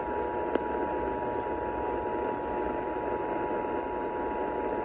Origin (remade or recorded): recorded